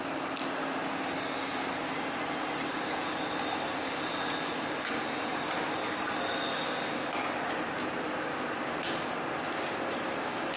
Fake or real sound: real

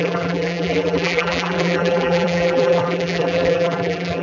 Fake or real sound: fake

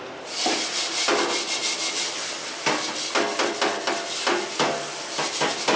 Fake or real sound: real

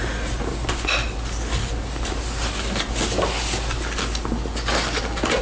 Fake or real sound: real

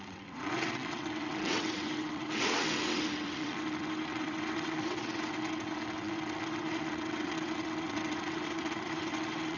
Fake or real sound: fake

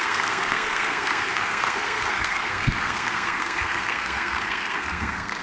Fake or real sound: fake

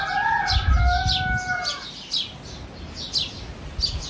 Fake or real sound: real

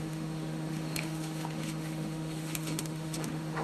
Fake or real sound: fake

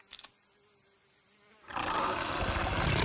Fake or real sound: real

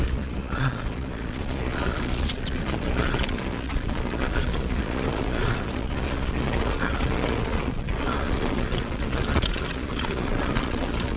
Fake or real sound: fake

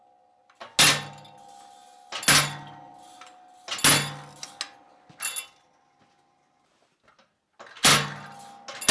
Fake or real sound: real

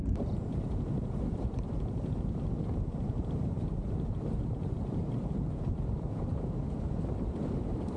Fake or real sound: fake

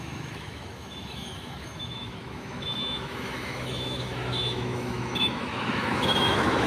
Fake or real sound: fake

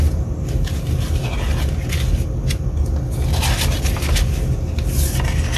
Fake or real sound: real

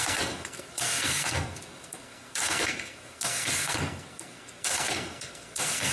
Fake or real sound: fake